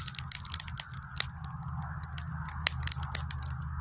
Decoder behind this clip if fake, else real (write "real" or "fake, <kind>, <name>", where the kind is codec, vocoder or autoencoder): real